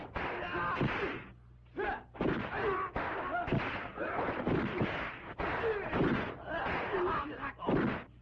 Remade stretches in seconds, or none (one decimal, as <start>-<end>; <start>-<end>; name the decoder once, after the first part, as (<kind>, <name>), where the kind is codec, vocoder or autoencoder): none

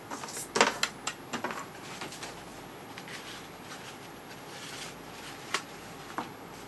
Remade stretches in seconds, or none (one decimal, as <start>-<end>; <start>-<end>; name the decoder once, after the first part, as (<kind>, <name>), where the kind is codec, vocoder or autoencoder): 2.5-6.7 (vocoder, BigVGAN v2)

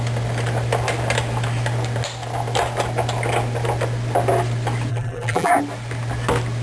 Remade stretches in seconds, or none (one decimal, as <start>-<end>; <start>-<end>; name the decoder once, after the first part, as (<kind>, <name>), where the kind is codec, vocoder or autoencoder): 4.9-5.5 (vocoder, BigVGAN v2)

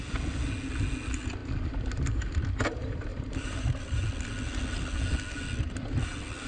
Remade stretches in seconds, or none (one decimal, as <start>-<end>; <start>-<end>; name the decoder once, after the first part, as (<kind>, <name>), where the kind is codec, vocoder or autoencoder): 3.1-4.0 (vocoder, BigVGAN v2)

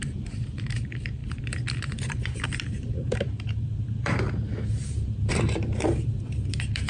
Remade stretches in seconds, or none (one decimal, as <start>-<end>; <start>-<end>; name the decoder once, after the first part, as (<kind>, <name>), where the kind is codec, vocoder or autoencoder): 0.0-6.9 (vocoder, BigVGAN v2)

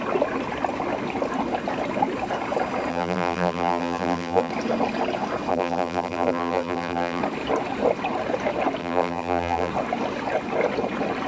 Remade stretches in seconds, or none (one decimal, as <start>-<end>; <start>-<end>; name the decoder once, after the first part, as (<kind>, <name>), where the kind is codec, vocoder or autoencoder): 2.9-4.5 (vocoder, BigVGAN v2); 5.5-7.2; 8.8-9.7

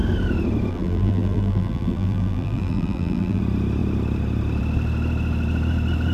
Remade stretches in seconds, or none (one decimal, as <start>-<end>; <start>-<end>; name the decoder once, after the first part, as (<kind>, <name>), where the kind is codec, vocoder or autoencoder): 0.7-3.4 (vocoder, BigVGAN v2)

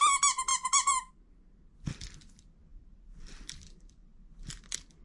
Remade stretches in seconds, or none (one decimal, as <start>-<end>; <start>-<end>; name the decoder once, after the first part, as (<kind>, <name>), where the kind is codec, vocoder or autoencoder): 0.5-1.1 (vocoder, BigVGAN v2); 2.7-4.6